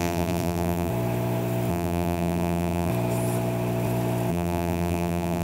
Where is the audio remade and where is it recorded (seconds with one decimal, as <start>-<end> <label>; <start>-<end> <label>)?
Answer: 0.0-0.9 remade; 0.9-1.7 recorded; 1.7-2.9 remade; 2.9-4.3 recorded; 4.3-5.4 remade